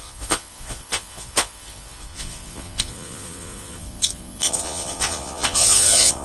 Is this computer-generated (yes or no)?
yes